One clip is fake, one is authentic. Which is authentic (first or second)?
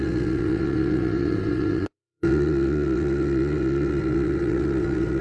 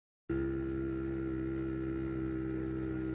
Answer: second